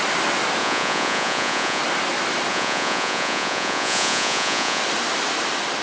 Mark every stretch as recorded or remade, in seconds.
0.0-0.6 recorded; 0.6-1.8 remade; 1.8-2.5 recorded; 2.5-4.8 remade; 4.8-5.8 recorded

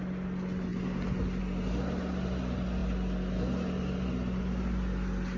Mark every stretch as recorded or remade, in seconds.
0.0-5.4 recorded

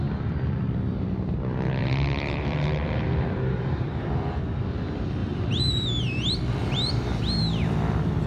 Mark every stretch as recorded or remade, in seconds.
0.0-1.8 recorded; 1.8-4.4 remade; 4.4-5.2 recorded; 5.2-5.9 remade; 5.9-6.6 recorded; 6.6-7.2 remade; 7.2-8.3 recorded

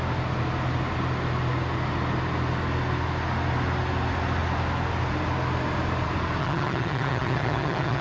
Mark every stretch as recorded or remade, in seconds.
0.0-6.4 recorded; 6.4-8.0 remade